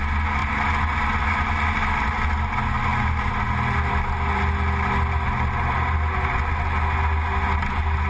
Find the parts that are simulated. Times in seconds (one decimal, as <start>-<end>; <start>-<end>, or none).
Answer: none